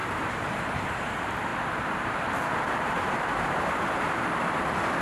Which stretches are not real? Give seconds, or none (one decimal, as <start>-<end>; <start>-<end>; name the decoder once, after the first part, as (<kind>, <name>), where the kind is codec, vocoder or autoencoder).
0.0-0.8 (vocoder, BigVGAN v2); 1.5-4.5